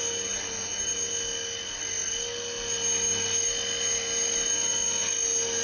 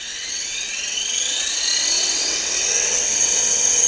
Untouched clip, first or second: first